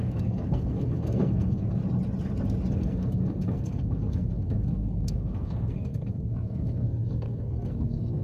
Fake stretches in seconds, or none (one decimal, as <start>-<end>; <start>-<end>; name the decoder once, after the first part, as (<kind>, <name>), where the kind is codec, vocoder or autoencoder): 0.0-1.8 (codec, SNAC); 2.7-8.2